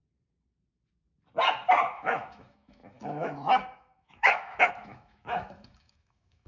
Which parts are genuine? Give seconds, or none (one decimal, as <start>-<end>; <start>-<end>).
0.0-1.9